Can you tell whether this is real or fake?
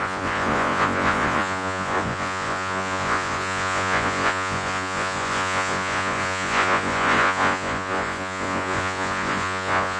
fake